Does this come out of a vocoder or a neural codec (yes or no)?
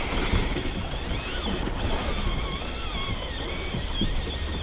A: no